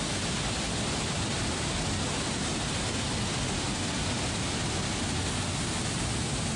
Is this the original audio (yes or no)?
yes